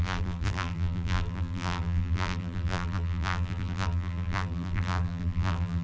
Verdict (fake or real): fake